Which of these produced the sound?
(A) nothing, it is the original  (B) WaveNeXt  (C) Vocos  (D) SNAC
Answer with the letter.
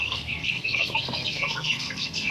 D